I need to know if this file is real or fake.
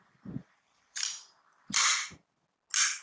real